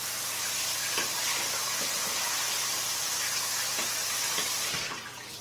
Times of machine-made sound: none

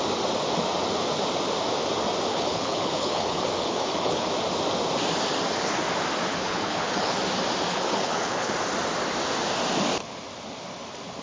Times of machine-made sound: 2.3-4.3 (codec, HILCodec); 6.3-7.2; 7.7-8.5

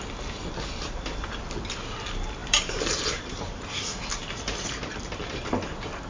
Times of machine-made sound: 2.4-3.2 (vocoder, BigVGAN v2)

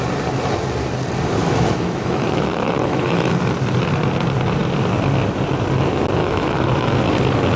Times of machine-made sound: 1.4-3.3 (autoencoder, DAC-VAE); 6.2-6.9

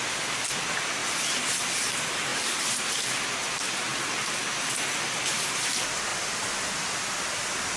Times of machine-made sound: 2.3-3.0 (vocoder, BigVGAN v2)

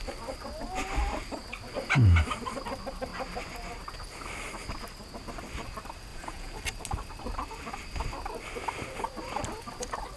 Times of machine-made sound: 6.1-6.6 (vocoder, Vocos)

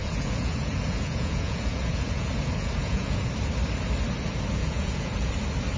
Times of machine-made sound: 0.0-3.3 (vocoder, Vocos); 4.6-5.3